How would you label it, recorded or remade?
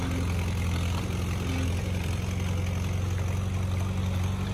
recorded